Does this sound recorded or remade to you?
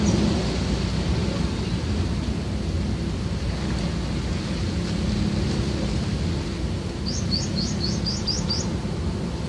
recorded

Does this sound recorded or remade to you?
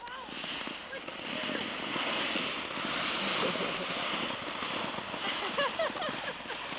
recorded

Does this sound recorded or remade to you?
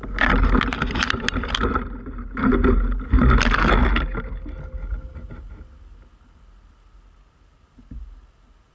recorded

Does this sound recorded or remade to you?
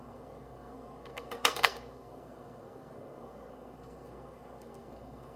remade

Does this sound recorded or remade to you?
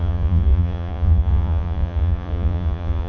remade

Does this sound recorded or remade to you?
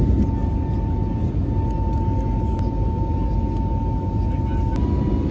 recorded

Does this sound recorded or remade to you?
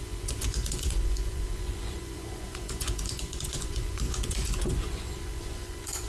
remade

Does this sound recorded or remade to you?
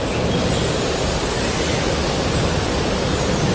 recorded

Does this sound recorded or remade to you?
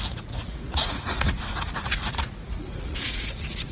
remade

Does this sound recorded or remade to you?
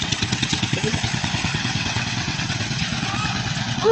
remade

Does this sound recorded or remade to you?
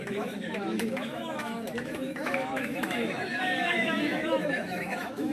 remade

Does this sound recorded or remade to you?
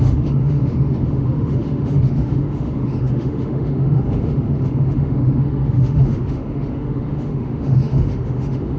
remade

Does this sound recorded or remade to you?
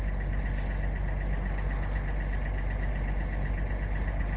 recorded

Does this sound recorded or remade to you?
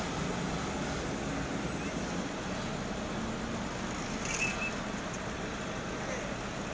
recorded